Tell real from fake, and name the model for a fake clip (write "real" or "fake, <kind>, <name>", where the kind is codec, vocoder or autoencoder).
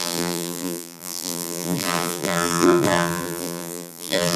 fake, vocoder, BigVGAN v2